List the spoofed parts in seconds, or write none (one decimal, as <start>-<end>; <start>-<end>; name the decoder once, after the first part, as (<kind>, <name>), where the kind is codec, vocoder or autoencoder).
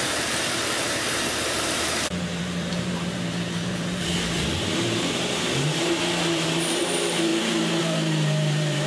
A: 0.0-8.9 (vocoder, BigVGAN v2)